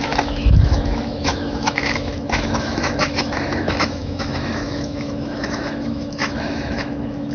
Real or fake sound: fake